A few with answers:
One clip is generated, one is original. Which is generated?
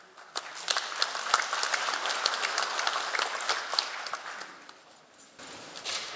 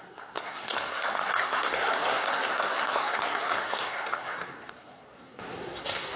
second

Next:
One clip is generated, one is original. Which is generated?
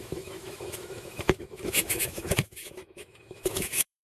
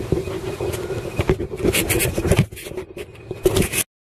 first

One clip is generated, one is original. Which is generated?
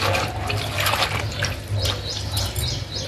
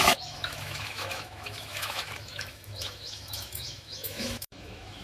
second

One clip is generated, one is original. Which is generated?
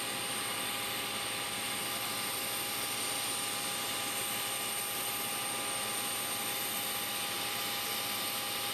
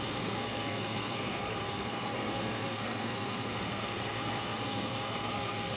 second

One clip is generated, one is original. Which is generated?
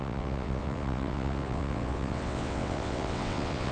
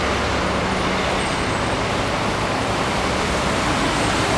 first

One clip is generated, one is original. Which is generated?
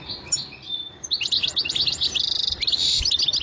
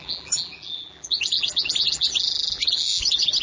second